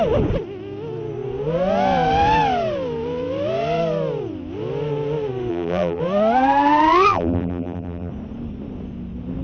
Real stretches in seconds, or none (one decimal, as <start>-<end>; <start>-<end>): 0.0-5.5; 6.0-7.1; 8.1-9.4